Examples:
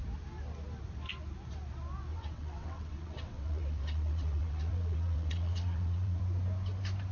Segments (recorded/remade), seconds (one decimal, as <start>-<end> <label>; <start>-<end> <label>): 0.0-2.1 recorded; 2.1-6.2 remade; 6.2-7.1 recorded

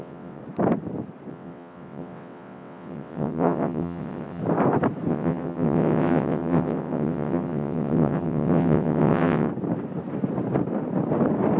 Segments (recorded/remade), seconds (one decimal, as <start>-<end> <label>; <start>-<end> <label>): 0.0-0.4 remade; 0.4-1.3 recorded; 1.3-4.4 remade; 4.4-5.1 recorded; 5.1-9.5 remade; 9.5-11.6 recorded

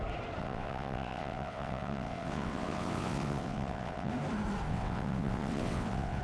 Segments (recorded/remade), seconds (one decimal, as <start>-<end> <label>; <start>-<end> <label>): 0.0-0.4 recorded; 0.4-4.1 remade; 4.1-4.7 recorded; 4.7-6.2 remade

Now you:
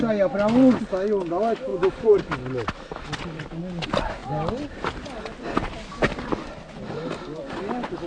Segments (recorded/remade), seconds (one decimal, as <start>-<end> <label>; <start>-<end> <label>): 0.0-8.1 recorded